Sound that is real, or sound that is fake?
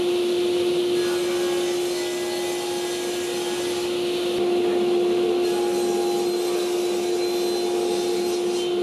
real